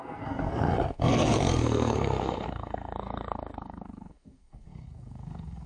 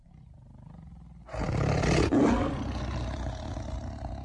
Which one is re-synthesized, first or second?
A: first